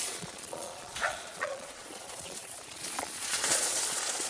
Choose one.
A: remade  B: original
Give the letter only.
A